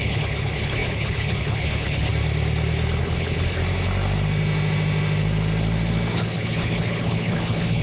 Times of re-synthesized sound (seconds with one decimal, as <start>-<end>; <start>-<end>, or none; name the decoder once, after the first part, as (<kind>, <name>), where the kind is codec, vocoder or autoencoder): 0.0-2.1 (codec, HILCodec); 3.0-3.6; 6.1-7.8